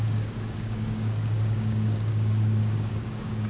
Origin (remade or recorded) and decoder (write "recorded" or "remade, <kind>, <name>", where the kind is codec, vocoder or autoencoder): remade, codec, DAC